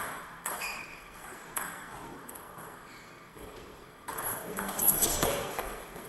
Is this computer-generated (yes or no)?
yes